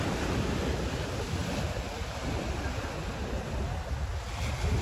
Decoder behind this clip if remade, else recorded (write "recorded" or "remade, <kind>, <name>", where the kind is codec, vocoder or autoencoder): recorded